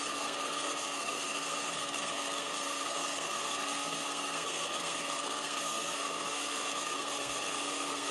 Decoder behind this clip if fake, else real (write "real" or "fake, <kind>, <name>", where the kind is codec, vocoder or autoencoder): fake, codec, SNAC